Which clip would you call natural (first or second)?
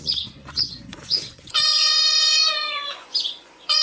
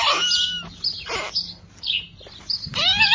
second